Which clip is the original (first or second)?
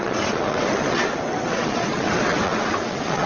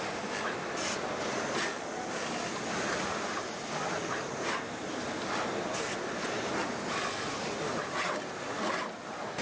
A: second